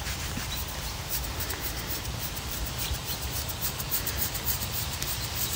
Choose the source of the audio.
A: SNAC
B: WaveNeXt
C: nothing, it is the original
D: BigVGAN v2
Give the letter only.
D